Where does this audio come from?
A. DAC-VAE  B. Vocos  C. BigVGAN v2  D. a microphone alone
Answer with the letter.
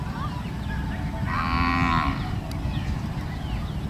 D